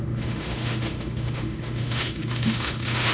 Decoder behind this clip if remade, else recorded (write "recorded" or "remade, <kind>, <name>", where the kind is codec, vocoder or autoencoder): remade, autoencoder, DAC-VAE